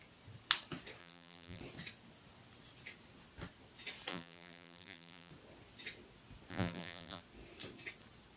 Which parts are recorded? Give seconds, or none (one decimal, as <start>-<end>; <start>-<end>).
0.0-1.0; 1.6-4.1; 5.3-6.5; 7.2-8.4